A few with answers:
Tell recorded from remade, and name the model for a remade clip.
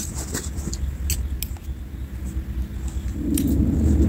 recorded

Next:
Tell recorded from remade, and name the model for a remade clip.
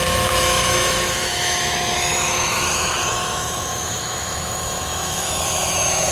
remade, autoencoder, DAC-VAE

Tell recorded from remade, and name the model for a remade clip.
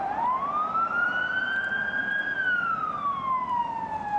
recorded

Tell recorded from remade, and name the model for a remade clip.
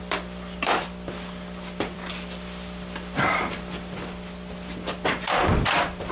remade, vocoder, BigVGAN v2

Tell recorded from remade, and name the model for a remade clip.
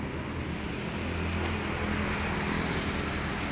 recorded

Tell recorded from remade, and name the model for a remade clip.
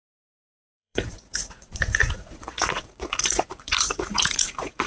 remade, vocoder, Vocos